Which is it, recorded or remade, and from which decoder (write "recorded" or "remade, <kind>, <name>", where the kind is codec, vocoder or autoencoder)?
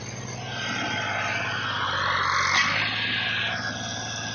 recorded